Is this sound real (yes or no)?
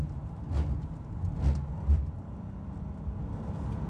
yes